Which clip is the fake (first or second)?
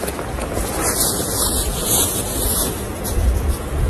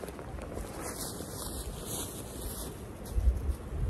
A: first